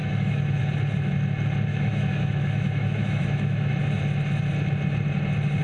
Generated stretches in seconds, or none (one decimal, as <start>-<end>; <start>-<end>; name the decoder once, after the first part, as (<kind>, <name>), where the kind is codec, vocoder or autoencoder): 0.0-0.6 (autoencoder, DAC-VAE); 1.7-3.7